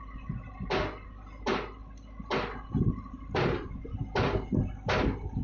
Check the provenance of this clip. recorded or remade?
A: recorded